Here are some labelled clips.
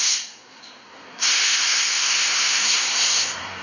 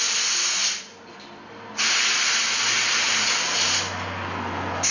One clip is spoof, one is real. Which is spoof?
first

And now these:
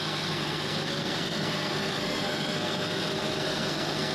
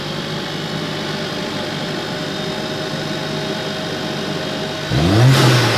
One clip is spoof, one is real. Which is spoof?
first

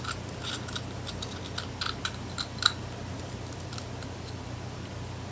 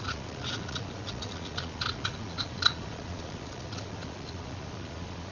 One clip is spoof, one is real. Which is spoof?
second